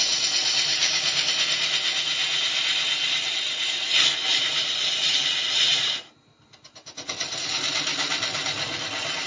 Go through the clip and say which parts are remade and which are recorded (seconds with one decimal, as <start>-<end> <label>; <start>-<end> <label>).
0.0-0.7 recorded; 0.7-1.3 remade; 1.3-9.3 recorded